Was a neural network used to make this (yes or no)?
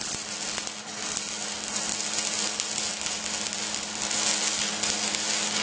no